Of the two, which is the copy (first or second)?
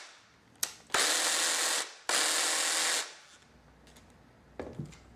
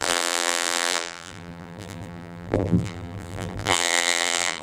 second